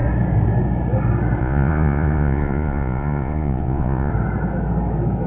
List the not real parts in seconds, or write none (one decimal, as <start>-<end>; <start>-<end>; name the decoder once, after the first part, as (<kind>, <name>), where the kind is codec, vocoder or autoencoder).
1.4-4.1 (vocoder, Vocos)